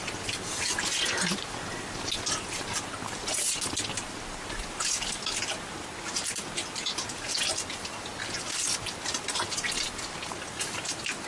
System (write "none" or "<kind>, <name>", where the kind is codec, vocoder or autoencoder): none